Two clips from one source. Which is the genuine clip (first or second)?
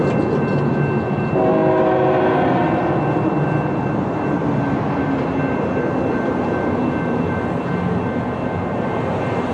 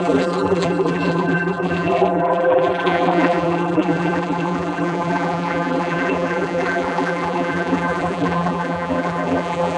first